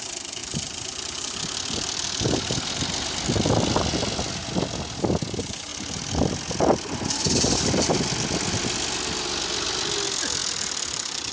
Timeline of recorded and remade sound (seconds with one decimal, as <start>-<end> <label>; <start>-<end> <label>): 0.0-11.3 recorded